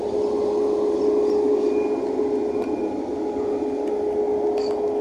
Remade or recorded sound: recorded